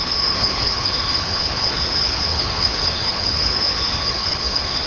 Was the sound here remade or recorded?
remade